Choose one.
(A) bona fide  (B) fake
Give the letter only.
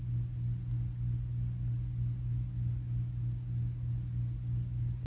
A